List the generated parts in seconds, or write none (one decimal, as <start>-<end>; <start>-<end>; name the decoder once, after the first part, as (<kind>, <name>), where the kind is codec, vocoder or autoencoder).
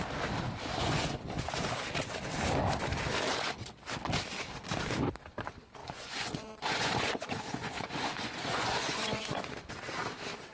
0.8-1.4 (vocoder, Vocos); 5.8-9.7